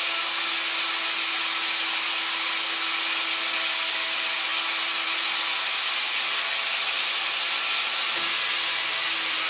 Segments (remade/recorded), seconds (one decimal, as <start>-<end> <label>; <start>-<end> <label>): 0.0-9.5 recorded